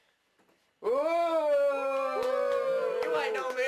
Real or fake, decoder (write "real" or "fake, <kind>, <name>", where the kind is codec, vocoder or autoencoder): real